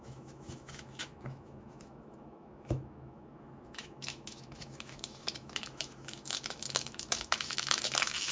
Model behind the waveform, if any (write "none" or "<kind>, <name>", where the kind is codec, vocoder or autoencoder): autoencoder, DAC-VAE